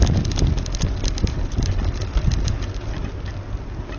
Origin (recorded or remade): recorded